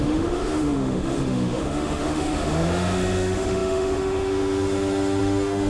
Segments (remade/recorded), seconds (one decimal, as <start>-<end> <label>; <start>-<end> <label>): 0.0-5.7 remade